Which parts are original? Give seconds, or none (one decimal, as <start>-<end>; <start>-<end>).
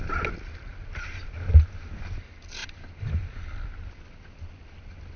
0.0-5.2